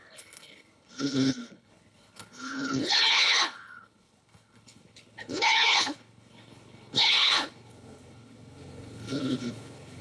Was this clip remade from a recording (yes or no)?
yes